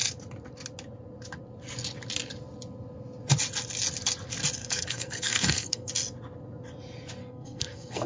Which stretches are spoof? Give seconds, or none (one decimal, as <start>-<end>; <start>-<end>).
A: 4.6-5.9; 7.2-8.1

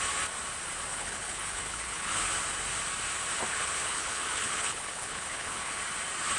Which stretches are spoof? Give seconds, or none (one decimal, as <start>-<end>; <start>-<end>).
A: 0.9-2.2; 3.5-5.8

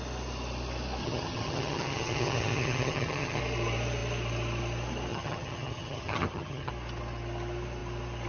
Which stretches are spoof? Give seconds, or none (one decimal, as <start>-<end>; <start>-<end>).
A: 1.0-3.4; 5.1-6.7

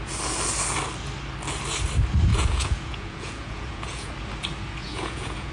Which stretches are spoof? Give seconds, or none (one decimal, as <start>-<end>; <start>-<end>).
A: 2.3-4.1; 4.8-5.5